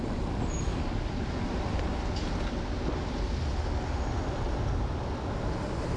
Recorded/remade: recorded